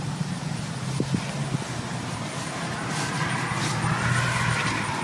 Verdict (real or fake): real